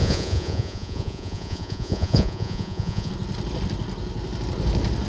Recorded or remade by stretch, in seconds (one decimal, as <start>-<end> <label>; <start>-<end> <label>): 0.0-3.1 remade; 3.1-5.1 recorded